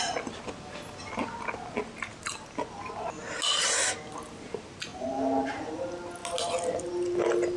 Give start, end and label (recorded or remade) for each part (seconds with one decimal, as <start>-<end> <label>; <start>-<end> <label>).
0.0-7.6 recorded

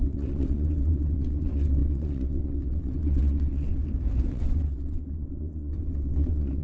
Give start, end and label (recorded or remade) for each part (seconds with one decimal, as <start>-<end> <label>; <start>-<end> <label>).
0.0-3.8 remade; 3.8-4.3 recorded; 4.3-6.6 remade

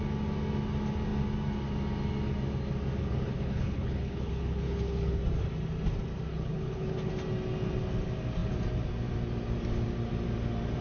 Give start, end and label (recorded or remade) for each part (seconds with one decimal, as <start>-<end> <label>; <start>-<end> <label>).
0.0-3.0 recorded; 3.0-5.2 remade; 5.2-6.3 recorded; 6.3-7.1 remade; 7.1-10.8 recorded

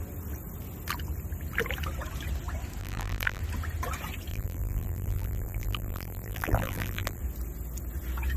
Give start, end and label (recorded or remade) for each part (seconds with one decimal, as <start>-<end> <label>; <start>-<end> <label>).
0.0-2.8 recorded; 2.8-3.4 remade; 3.4-4.3 recorded; 4.3-7.2 remade; 7.2-8.4 recorded

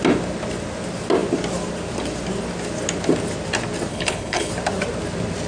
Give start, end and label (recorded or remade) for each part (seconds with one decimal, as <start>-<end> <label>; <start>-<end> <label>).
0.0-3.9 recorded; 3.9-4.5 remade; 4.5-5.5 recorded